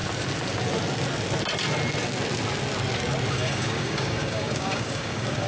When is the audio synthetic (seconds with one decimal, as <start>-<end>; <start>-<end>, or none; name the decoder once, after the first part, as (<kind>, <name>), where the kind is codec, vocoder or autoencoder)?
3.3-5.5 (codec, DAC)

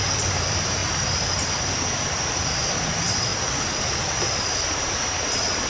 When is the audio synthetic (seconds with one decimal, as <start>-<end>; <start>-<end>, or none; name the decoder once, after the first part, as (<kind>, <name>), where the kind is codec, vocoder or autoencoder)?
0.0-0.8 (vocoder, BigVGAN v2); 1.7-5.7

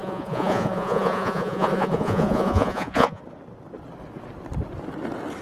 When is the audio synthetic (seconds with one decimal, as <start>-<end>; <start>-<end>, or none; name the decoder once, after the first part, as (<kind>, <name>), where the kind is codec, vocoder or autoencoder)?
0.0-3.2 (vocoder, Vocos)

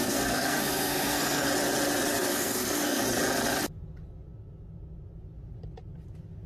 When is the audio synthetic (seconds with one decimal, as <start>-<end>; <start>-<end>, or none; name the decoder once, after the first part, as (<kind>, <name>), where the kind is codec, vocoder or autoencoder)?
0.0-1.5 (codec, SNAC); 2.2-3.0

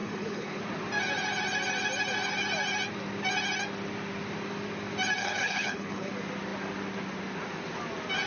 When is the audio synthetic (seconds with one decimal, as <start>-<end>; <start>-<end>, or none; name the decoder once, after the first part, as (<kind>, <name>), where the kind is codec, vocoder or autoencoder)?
0.0-0.6 (codec, HILCodec); 5.2-6.1

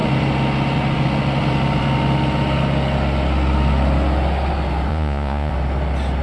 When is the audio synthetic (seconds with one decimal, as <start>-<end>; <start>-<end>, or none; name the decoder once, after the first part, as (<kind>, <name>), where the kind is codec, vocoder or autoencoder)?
4.9-5.5 (vocoder, Vocos)

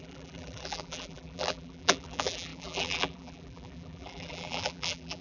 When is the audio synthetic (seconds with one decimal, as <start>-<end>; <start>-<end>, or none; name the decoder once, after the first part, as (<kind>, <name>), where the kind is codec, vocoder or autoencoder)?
0.0-5.2 (vocoder, BigVGAN v2)